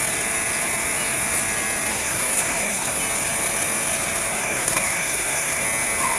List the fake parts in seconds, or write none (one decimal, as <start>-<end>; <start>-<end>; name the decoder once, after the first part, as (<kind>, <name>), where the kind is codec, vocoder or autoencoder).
1.9-3.0 (codec, SNAC); 4.3-5.6